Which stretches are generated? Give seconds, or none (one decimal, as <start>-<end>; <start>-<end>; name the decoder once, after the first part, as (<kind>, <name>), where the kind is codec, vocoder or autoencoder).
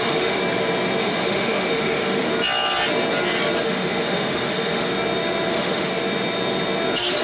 0.0-0.4 (autoencoder, DAC-VAE); 1.0-2.3; 3.6-4.9; 5.5-5.9